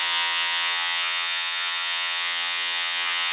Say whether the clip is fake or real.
fake